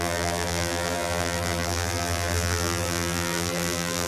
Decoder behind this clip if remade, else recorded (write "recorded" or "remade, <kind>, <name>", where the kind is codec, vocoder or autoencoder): remade, vocoder, BigVGAN v2